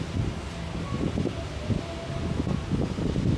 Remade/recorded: recorded